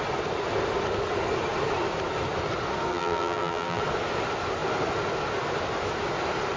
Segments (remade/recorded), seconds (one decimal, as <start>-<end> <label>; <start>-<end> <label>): 0.0-2.9 recorded; 2.9-3.8 remade; 3.8-6.6 recorded